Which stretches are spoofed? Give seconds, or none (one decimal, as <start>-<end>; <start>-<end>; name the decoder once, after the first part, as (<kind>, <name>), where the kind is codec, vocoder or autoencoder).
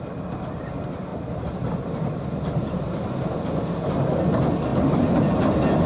1.1-3.9 (vocoder, BigVGAN v2); 4.7-5.4